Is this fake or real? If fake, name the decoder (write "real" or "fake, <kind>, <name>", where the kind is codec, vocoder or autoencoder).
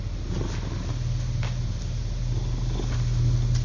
real